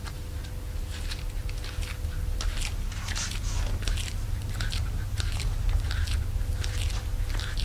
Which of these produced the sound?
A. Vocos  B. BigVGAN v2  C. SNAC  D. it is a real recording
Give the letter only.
D